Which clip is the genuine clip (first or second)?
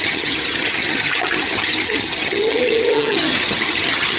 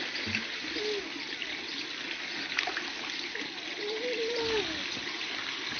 second